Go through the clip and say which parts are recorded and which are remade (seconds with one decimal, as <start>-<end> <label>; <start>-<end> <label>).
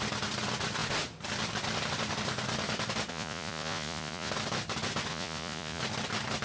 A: 0.0-3.1 recorded; 3.1-4.3 remade; 4.3-5.1 recorded; 5.1-5.8 remade; 5.8-6.4 recorded